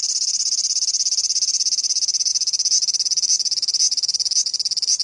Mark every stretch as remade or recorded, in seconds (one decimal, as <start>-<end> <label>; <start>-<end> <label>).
0.0-5.0 recorded